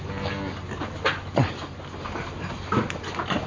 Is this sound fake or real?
real